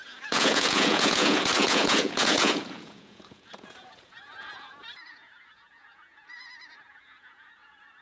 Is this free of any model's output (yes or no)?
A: no